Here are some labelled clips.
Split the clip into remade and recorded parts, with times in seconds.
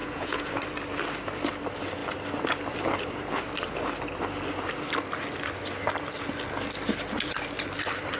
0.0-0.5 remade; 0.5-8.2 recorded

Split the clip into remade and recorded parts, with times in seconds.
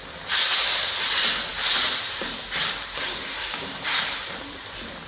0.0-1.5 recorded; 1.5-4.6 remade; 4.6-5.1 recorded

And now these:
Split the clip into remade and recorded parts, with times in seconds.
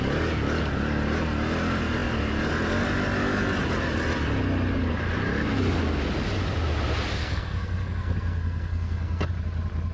0.0-7.2 recorded; 7.2-9.3 remade; 9.3-9.9 recorded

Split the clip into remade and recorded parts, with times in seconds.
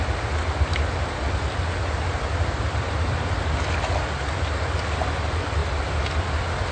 0.0-6.7 recorded